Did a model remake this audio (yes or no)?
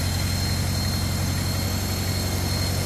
no